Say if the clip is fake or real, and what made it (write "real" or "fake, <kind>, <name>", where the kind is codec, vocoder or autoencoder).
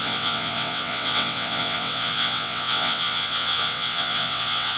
fake, vocoder, WaveNeXt